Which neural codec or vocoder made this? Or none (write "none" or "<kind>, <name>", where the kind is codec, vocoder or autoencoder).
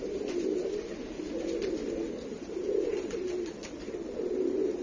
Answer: none